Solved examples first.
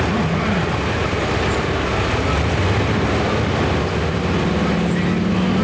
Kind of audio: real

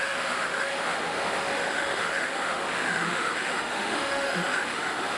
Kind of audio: fake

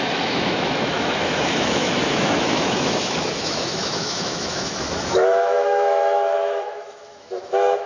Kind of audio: fake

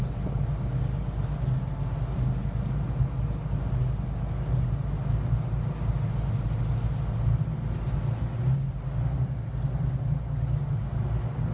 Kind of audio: real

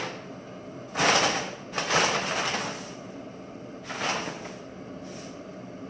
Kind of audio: real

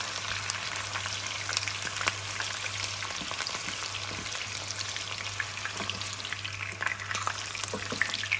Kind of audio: real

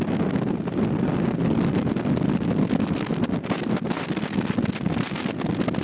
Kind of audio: real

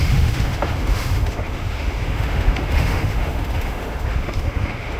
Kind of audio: fake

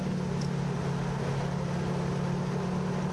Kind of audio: real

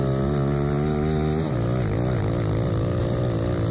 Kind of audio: real